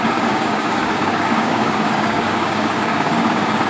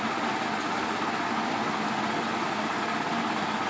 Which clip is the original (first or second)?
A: second